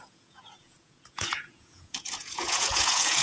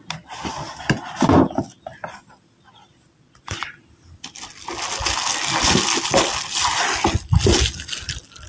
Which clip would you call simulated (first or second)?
first